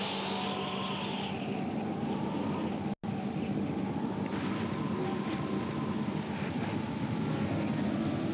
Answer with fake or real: real